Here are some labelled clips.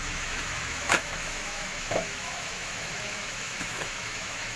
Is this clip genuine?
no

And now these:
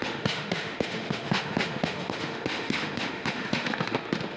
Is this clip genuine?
no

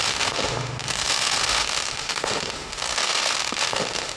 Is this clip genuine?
no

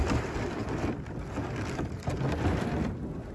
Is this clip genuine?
yes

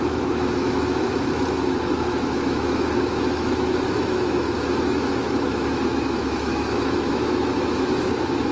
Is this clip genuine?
no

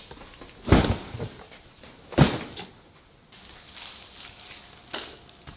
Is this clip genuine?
yes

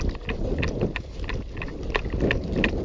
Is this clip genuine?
yes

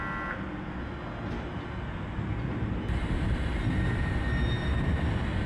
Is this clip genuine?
yes